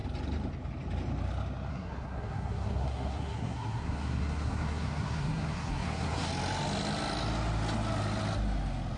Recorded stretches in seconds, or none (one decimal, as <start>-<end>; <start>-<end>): 0.0-1.7; 6.3-9.0